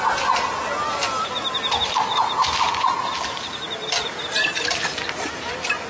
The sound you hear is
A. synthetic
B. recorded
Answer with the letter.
B